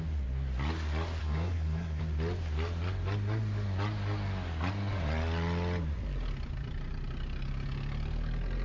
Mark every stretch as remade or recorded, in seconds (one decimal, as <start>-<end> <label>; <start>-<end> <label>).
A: 0.0-1.2 recorded; 1.2-2.0 remade; 2.0-8.6 recorded